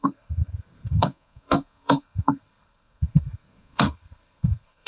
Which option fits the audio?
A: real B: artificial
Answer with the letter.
B